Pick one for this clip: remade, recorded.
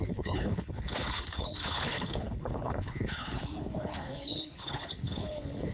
remade